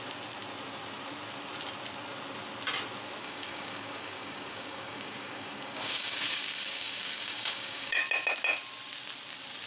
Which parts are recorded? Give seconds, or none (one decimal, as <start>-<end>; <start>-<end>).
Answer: 0.0-3.2; 8.0-9.7